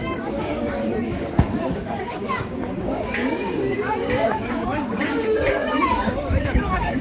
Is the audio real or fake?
fake